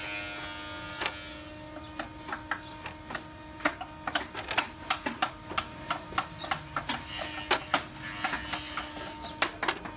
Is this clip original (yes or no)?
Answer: yes